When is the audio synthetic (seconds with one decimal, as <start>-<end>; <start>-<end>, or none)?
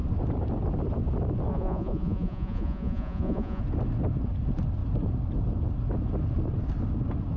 1.5-3.6